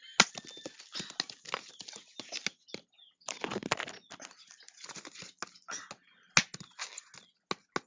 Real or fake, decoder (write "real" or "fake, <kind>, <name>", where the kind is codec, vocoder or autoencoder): real